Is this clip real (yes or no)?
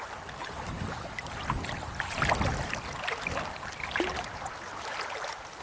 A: yes